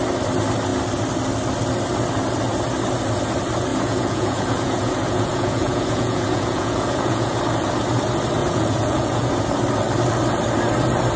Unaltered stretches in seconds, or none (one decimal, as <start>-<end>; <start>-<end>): 0.0-3.7; 7.4-8.4; 9.3-11.2